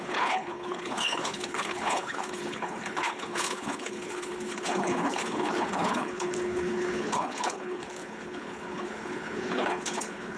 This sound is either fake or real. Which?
fake